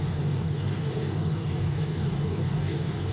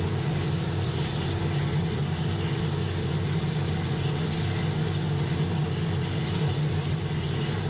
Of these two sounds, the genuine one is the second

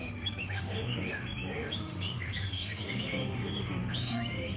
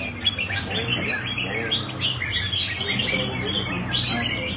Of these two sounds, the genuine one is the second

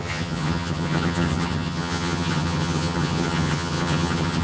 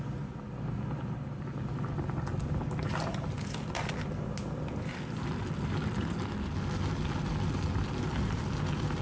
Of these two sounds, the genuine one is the second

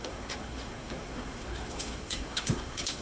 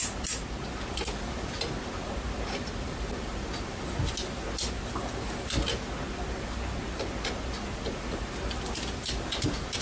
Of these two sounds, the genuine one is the second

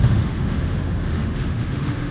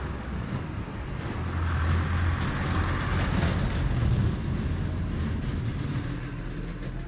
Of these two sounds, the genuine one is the second